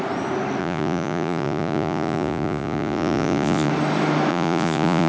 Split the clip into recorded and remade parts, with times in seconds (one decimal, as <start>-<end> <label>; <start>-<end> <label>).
0.0-0.6 recorded; 0.6-3.7 remade; 3.7-4.3 recorded; 4.3-5.1 remade